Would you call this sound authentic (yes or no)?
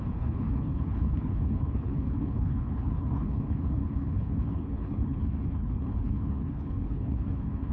no